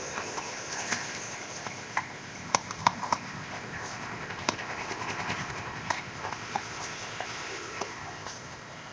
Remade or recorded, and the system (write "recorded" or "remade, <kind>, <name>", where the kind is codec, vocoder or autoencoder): remade, codec, ZipCodec